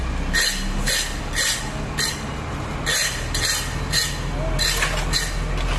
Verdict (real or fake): real